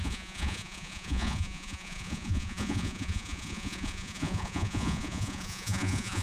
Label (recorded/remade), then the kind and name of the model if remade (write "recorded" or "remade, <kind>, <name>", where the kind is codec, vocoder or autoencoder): remade, vocoder, Vocos